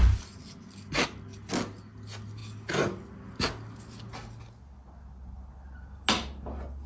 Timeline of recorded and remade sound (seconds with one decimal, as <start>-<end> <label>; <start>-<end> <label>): 0.0-6.9 recorded